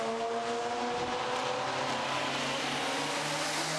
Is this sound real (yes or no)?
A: yes